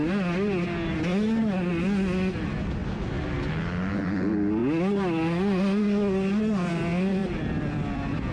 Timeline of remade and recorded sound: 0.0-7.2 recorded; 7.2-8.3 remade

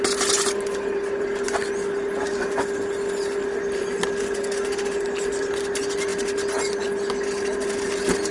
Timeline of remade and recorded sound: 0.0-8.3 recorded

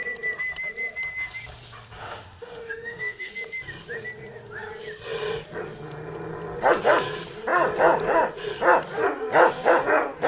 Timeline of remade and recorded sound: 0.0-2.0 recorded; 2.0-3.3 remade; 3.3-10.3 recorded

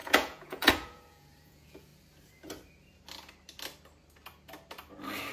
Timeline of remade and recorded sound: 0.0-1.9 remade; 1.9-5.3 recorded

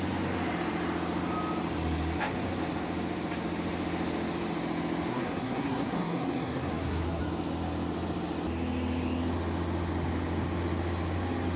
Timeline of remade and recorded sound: 0.0-5.1 recorded; 5.1-7.2 remade; 7.2-11.6 recorded